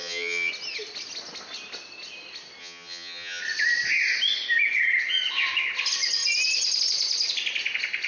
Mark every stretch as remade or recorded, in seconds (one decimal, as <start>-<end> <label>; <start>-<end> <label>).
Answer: 0.0-0.5 remade; 0.5-2.6 recorded; 2.6-3.4 remade; 3.4-8.1 recorded